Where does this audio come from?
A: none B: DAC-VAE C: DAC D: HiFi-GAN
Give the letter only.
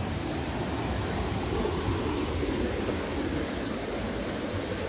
A